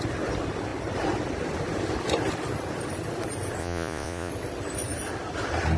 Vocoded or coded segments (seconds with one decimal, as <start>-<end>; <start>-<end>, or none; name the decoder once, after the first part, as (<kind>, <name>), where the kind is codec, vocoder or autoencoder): 3.6-4.3 (vocoder, Vocos)